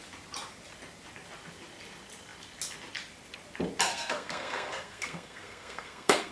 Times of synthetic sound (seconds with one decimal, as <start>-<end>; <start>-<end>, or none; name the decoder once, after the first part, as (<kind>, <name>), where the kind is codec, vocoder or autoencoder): 3.9-6.3 (codec, SNAC)